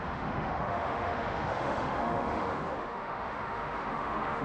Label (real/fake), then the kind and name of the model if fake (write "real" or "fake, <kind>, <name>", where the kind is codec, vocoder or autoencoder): fake, autoencoder, DAC-VAE